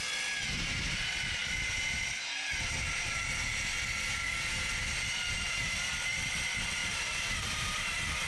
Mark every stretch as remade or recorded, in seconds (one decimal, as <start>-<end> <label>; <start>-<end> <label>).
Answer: 0.0-6.8 recorded; 6.8-7.5 remade; 7.5-8.3 recorded